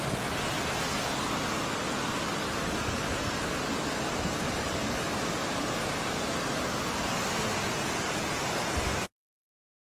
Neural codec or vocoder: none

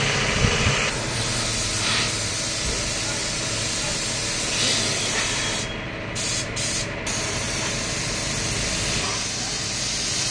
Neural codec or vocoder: none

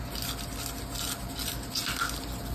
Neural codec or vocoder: none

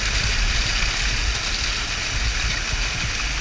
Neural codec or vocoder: none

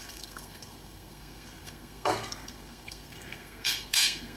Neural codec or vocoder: codec, SNAC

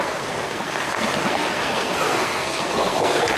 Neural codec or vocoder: codec, SNAC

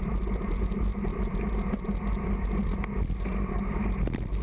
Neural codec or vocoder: none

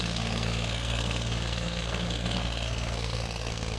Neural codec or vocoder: codec, SNAC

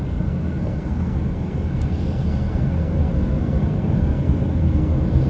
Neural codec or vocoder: codec, SNAC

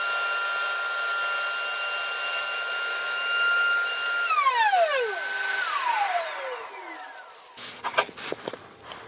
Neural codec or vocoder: none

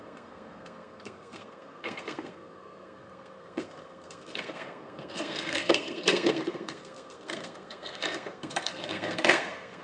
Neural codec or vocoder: codec, SNAC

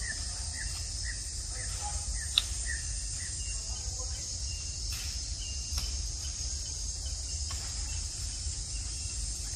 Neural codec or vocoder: none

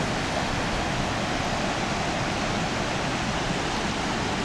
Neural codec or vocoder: none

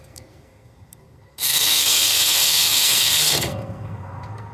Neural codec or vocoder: codec, SNAC